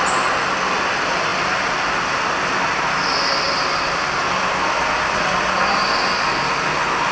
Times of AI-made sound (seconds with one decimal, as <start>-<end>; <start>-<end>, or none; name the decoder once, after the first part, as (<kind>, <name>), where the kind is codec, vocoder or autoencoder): none